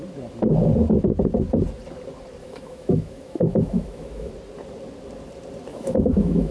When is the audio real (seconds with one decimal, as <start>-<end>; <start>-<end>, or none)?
0.0-2.4; 4.3-5.7